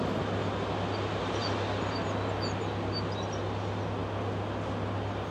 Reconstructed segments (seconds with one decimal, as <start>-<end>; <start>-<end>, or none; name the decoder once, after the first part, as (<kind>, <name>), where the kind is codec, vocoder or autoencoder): none